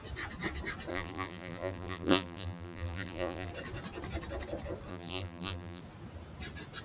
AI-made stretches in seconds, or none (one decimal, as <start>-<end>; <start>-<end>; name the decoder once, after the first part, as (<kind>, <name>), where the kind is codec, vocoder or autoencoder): 0.9-3.5 (vocoder, BigVGAN v2); 4.9-5.8